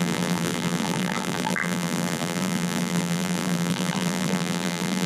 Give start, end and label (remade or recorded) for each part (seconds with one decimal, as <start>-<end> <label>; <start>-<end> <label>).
0.0-5.1 remade